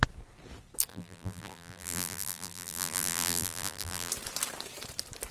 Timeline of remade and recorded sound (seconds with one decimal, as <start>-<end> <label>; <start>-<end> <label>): 0.0-0.9 recorded; 0.9-4.1 remade; 4.1-5.3 recorded

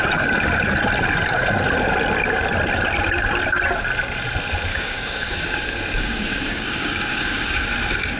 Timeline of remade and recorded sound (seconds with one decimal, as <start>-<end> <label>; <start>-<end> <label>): 0.0-4.7 recorded; 4.7-7.7 remade; 7.7-8.2 recorded